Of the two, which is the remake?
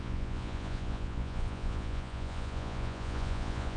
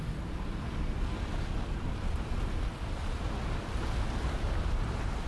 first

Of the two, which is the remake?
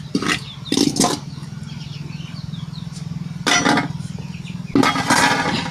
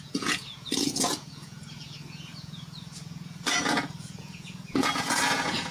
second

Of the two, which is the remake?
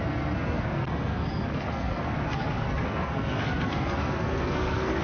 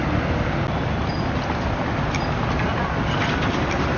first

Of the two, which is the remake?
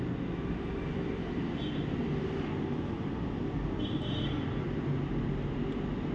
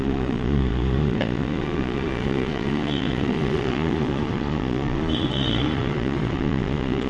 second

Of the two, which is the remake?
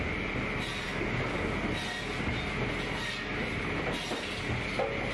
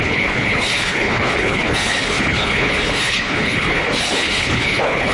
second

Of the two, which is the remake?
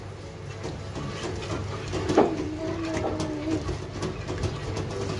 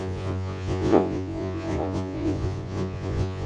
second